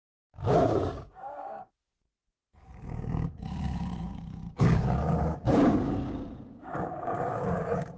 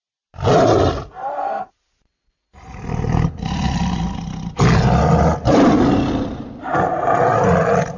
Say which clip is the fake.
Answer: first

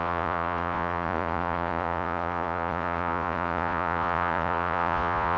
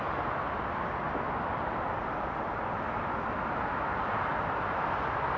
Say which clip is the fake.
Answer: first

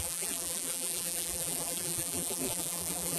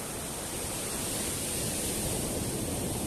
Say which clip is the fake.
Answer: first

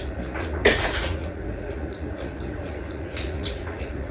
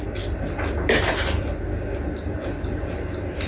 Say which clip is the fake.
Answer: first